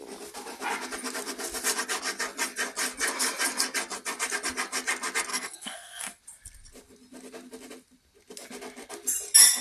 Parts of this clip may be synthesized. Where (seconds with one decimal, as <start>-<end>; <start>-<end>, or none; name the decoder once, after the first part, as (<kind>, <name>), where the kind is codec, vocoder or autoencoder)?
5.3-6.2 (codec, SNAC)